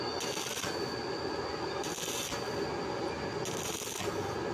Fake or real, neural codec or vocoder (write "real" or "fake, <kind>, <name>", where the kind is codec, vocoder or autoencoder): real